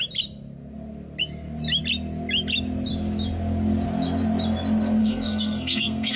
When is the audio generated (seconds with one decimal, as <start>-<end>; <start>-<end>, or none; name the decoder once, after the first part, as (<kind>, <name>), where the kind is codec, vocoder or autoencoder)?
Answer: 5.0-6.2 (codec, SNAC)